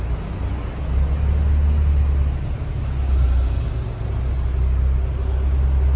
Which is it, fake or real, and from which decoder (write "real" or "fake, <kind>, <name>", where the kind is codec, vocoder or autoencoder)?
real